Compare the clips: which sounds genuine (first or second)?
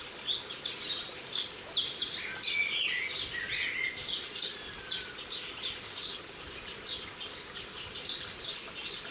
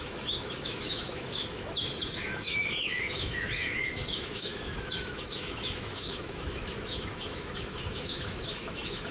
first